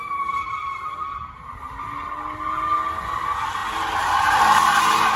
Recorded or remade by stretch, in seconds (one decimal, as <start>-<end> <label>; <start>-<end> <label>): 0.0-5.2 recorded